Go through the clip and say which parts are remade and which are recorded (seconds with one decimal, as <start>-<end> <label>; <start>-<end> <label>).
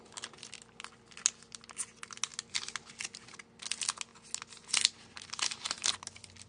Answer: 0.0-6.5 recorded